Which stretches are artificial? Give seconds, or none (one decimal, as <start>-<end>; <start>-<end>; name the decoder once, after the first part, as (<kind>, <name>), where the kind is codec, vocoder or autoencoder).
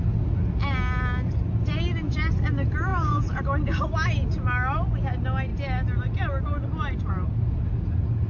2.9-3.4 (vocoder, Vocos)